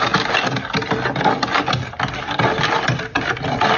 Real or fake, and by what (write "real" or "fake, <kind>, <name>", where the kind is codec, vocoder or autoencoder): real